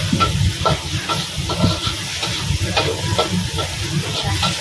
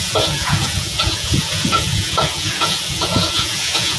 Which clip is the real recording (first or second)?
first